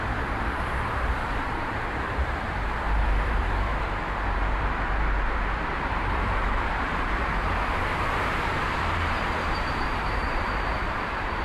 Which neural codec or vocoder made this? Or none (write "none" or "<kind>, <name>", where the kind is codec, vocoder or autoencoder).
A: vocoder, BigVGAN v2